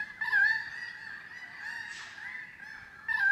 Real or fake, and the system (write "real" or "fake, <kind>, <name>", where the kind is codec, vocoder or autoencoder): real